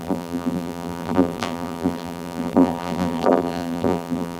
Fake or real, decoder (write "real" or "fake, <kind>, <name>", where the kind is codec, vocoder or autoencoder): fake, vocoder, BigVGAN v2